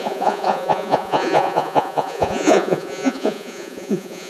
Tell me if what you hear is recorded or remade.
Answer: remade